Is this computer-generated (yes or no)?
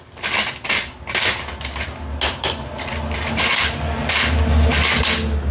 no